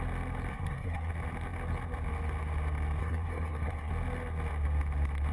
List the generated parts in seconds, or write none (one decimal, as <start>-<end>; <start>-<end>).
0.5-1.1; 3.0-3.9